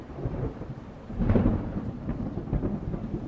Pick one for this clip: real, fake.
fake